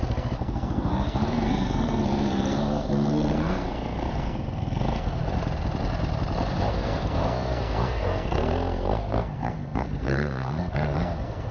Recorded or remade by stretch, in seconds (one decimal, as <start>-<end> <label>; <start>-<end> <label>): 0.0-5.2 remade; 5.2-6.7 recorded; 6.7-11.5 remade